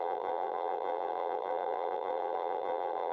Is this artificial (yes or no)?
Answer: yes